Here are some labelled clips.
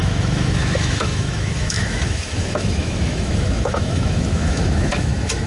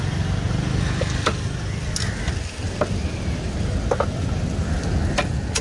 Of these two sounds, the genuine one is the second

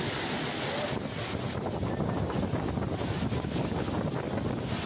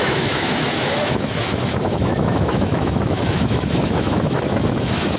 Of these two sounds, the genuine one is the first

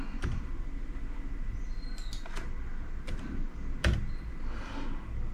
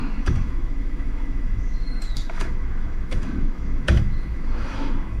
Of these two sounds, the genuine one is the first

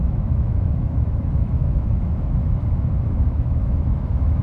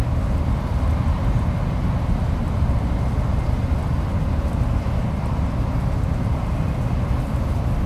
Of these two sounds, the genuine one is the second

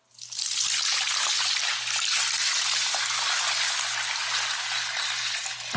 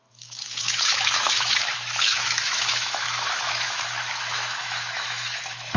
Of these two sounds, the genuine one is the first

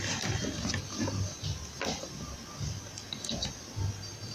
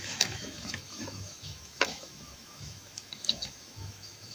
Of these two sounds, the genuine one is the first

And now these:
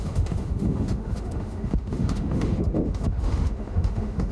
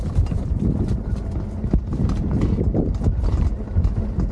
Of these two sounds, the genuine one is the second